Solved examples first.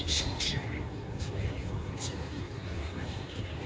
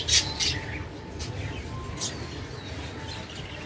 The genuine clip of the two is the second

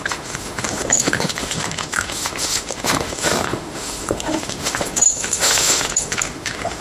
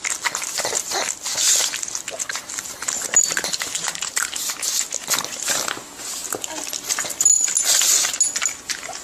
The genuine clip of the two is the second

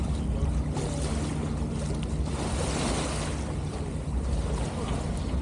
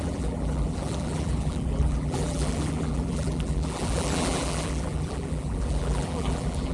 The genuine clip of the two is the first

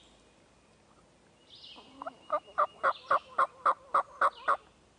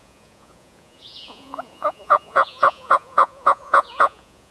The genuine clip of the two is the first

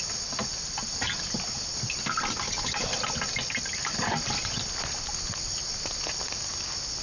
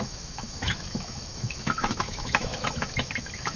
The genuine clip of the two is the first